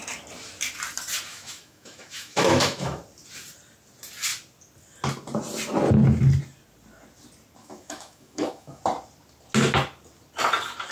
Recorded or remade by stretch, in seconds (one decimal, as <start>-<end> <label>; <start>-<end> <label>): 0.0-1.3 recorded; 1.3-3.0 remade; 3.0-7.6 recorded; 7.6-8.8 remade; 8.8-10.9 recorded